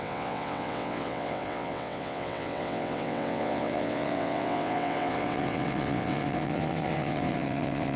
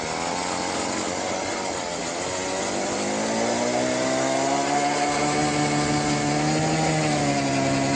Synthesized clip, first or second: first